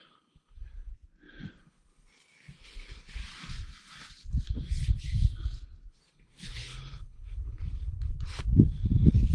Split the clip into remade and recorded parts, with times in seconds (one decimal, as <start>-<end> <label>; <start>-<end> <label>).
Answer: 0.0-0.9 remade; 0.9-1.5 recorded; 1.5-3.2 remade; 3.2-5.9 recorded; 5.9-9.3 remade